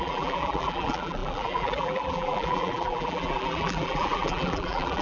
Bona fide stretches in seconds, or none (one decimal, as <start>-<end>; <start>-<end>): none